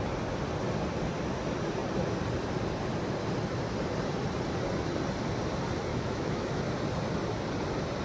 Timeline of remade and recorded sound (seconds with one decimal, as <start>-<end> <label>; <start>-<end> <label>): 0.0-5.9 recorded; 5.9-6.7 remade; 6.7-8.0 recorded